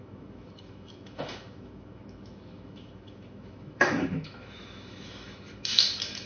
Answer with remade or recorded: remade